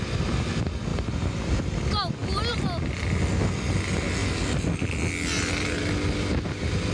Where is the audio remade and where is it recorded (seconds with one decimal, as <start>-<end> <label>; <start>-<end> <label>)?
0.0-6.9 recorded